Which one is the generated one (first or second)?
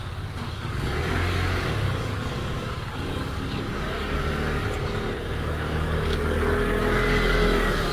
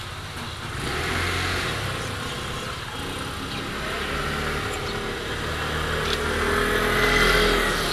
first